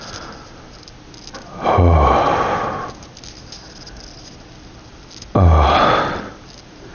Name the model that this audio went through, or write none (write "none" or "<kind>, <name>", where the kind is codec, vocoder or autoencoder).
none